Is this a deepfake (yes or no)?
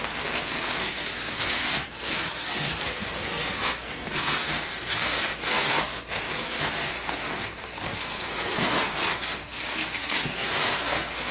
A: yes